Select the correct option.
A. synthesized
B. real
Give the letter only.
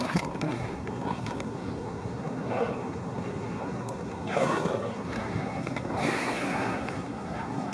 A